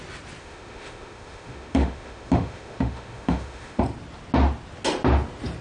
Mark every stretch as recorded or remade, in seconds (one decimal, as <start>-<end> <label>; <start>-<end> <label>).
0.0-0.4 recorded; 0.4-3.8 remade; 3.8-5.6 recorded